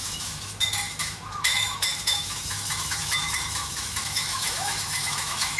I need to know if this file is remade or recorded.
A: remade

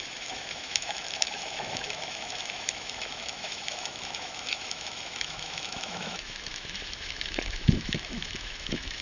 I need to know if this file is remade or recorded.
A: remade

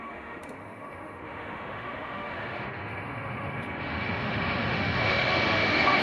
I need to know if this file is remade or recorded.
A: remade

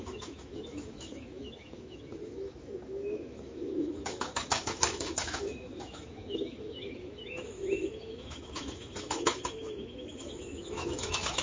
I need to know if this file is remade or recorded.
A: remade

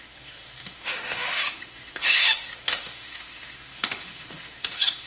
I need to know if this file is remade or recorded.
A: remade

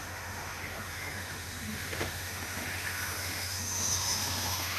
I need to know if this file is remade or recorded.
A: remade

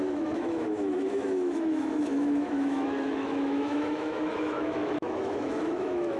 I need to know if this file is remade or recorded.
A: remade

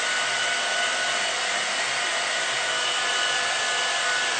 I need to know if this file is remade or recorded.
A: recorded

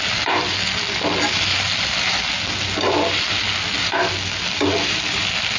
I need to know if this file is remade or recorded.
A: recorded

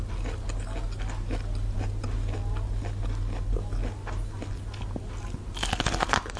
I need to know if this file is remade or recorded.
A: recorded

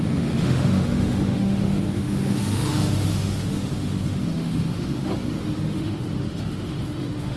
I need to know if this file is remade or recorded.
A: remade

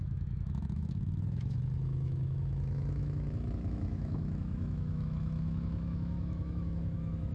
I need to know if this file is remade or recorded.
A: remade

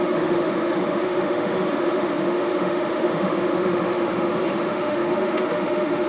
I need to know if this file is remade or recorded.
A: remade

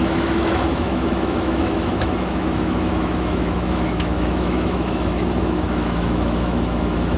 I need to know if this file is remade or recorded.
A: remade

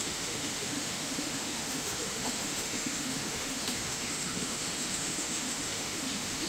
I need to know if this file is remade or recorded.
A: remade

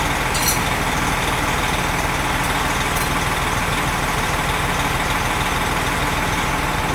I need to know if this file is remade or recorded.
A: recorded